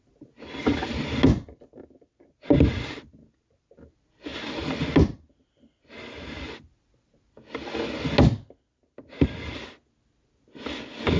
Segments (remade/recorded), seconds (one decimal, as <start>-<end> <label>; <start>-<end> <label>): 0.0-11.2 recorded

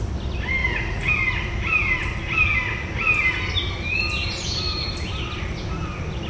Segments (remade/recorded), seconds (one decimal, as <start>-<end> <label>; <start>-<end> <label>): 0.0-0.6 recorded; 0.6-1.1 remade; 1.1-6.3 recorded

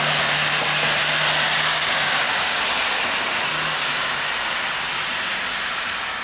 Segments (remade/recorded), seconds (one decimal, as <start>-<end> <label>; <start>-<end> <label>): 0.0-1.7 recorded; 1.7-2.6 remade; 2.6-6.2 recorded